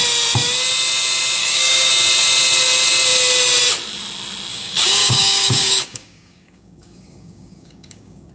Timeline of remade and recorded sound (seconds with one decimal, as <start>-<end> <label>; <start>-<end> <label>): 0.0-1.4 recorded; 1.4-1.9 remade; 1.9-4.5 recorded; 4.5-8.3 remade